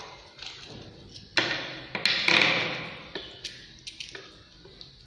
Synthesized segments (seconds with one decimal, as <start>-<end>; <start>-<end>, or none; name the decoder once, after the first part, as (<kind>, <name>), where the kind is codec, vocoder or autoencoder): none